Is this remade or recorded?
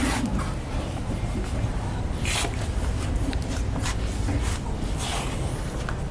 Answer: recorded